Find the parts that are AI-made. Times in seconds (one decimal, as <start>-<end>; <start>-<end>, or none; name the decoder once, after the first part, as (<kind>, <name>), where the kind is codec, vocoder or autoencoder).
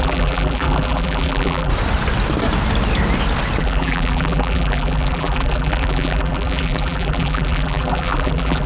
0.0-1.7 (vocoder, BigVGAN v2); 3.6-8.7